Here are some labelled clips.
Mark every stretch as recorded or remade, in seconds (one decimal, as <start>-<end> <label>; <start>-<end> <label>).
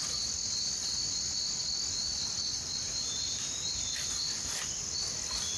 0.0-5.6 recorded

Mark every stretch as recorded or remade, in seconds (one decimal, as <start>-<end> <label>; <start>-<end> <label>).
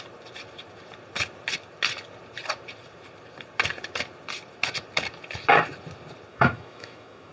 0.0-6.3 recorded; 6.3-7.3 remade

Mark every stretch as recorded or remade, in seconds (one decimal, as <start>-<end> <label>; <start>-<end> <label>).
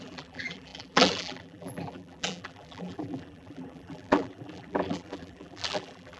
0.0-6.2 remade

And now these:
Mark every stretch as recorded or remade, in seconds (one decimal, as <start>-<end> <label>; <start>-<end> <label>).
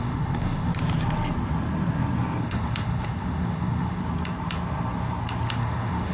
0.0-0.7 remade; 0.7-2.4 recorded; 2.4-4.0 remade; 4.0-5.5 recorded; 5.5-6.1 remade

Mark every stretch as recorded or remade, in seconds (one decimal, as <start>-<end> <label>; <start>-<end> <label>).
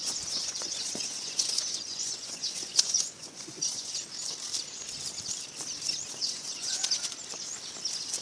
0.0-4.0 remade; 4.0-6.2 recorded; 6.2-6.8 remade; 6.8-8.2 recorded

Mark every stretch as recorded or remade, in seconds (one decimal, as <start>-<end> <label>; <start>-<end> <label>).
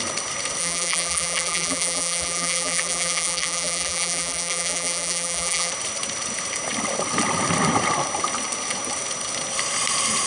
0.0-0.6 recorded; 0.6-5.7 remade; 5.7-10.3 recorded